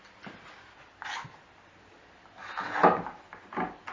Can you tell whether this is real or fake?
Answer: real